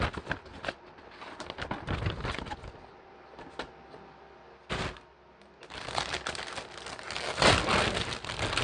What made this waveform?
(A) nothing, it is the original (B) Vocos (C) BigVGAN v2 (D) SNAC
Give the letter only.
A